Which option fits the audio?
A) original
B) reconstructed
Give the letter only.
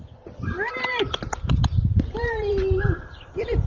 B